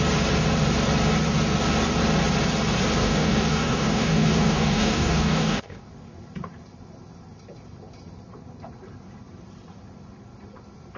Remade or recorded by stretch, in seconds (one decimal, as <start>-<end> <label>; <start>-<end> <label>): 0.0-3.0 recorded; 3.0-5.9 remade; 5.9-11.0 recorded